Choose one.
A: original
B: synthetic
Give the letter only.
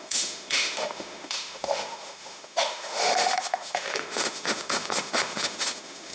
B